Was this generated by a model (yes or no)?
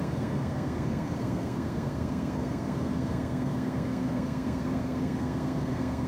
yes